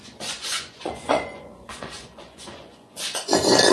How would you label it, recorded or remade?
remade